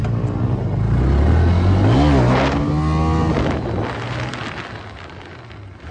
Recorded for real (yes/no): yes